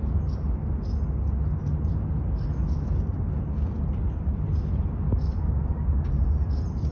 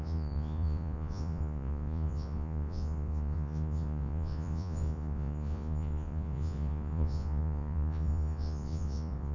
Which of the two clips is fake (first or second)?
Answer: second